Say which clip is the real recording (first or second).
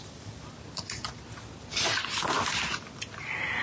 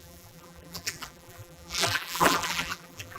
first